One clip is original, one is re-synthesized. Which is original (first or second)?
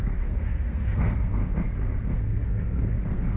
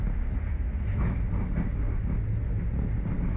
second